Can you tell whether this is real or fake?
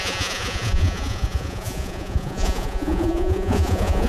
fake